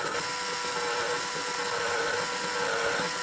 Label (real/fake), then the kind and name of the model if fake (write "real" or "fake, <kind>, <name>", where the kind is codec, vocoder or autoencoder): real